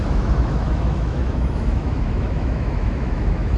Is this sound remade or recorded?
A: remade